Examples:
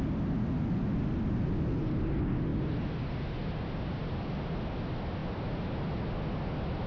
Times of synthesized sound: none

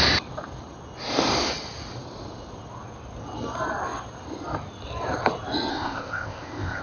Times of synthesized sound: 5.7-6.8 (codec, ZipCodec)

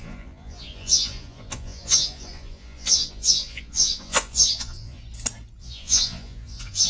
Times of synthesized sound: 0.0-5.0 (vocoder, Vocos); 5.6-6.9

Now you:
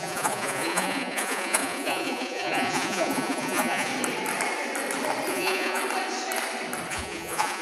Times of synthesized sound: 0.0-3.9 (vocoder, Vocos); 5.3-5.8; 6.9-7.6

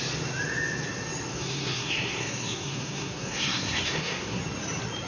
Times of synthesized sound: 1.3-4.4 (codec, SNAC)

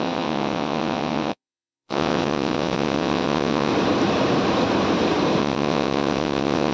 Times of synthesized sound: 0.0-3.7 (vocoder, WaveNeXt); 5.4-6.7

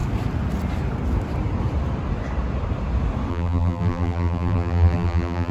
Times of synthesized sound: 3.3-5.5 (vocoder, BigVGAN v2)